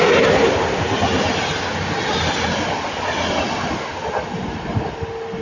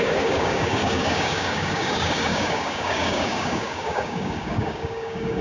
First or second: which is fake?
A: second